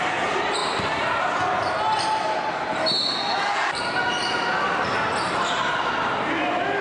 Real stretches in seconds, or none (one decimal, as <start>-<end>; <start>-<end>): 0.0-6.8